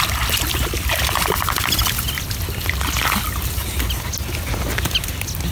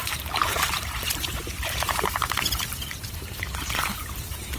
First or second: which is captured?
first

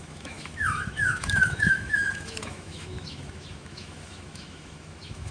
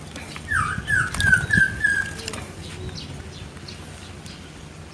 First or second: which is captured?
second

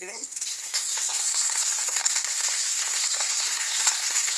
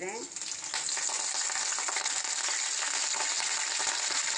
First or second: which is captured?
second